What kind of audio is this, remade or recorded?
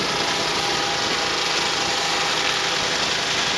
recorded